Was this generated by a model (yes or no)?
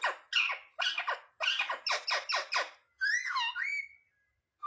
no